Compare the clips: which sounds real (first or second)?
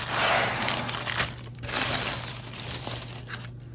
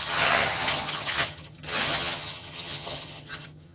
first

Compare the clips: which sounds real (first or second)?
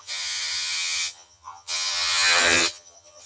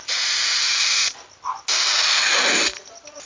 second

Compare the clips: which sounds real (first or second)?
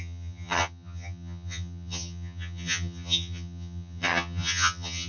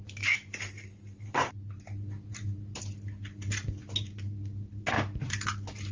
second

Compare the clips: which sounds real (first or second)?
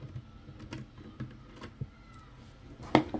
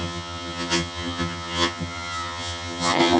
first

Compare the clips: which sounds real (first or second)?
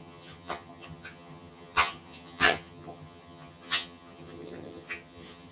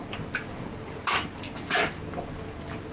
second